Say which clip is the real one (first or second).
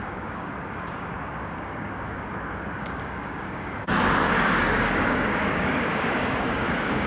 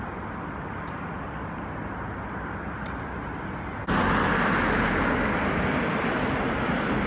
second